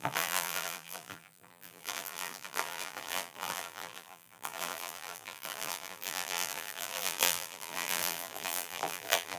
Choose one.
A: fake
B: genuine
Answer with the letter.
A